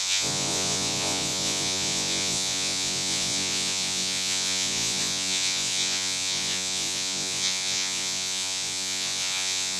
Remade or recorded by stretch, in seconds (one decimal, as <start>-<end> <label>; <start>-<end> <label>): 0.0-9.8 remade